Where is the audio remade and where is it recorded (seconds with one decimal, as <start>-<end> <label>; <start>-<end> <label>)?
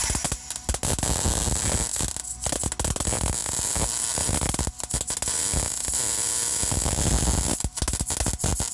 0.0-8.7 recorded